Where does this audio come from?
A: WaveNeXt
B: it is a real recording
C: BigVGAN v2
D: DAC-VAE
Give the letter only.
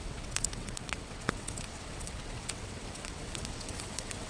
A